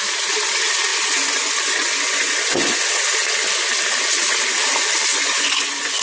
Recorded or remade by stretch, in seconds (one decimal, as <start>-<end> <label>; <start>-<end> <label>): 0.0-0.9 recorded; 0.9-2.9 remade; 2.9-5.1 recorded; 5.1-6.0 remade